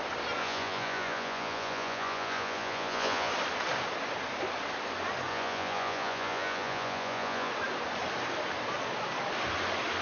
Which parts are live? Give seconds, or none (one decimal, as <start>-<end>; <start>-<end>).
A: 0.0-0.4; 3.3-5.3; 7.5-10.0